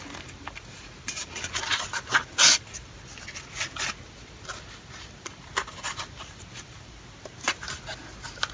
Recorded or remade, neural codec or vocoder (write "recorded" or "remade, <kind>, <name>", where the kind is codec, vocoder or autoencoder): recorded